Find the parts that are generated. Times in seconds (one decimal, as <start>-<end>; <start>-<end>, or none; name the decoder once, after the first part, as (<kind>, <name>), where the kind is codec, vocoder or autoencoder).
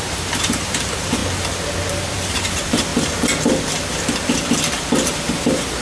0.0-1.2 (vocoder, BigVGAN v2); 1.9-2.9; 5.1-5.8